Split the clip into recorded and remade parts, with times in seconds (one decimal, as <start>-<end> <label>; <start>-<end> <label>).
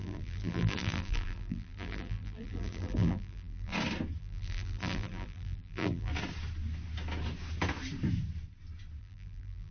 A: 0.0-3.7 remade; 3.7-4.2 recorded; 4.2-6.1 remade; 6.1-9.0 recorded; 9.0-9.7 remade